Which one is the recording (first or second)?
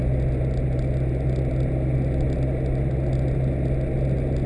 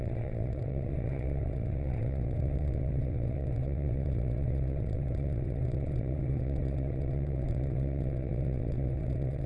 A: first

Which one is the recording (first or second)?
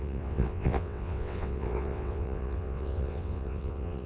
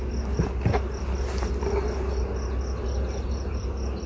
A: second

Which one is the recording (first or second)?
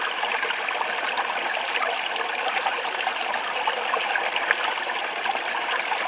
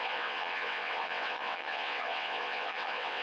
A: first